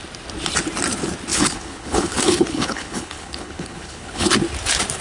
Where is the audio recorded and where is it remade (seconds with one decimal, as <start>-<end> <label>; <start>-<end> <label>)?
0.0-1.3 recorded; 1.3-4.3 remade; 4.3-5.0 recorded